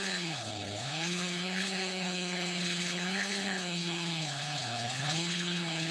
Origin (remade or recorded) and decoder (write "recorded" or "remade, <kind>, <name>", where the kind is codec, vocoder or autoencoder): remade, codec, HILCodec